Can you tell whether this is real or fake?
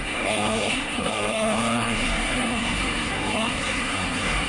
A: fake